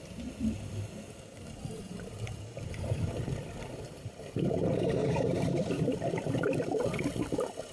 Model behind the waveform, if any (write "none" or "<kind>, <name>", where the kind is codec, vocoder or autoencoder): none